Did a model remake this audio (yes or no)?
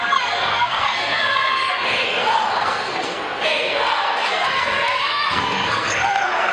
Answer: yes